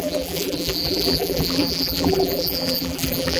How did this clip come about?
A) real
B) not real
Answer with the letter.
B